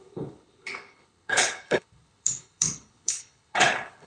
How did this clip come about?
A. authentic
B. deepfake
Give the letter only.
B